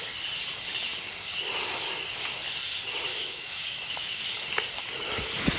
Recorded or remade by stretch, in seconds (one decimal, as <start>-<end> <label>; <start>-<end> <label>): 0.0-3.1 recorded; 3.1-4.2 remade; 4.2-5.6 recorded